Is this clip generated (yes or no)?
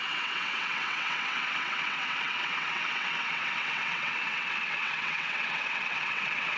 yes